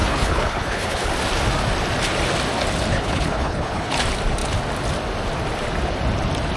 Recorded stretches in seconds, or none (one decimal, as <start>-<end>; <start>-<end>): 1.1-2.9; 3.9-6.6